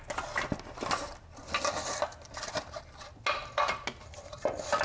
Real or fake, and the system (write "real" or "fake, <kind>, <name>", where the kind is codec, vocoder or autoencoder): real